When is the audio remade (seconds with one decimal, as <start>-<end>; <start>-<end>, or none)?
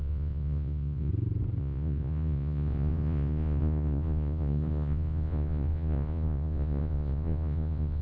0.0-1.1; 1.6-8.0